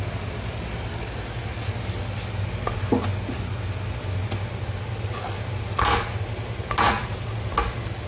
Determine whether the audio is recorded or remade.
recorded